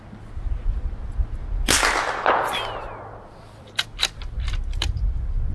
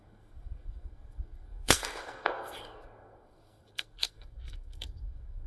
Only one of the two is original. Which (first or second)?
first